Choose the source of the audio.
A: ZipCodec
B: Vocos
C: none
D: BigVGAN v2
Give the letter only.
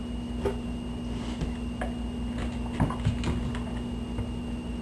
C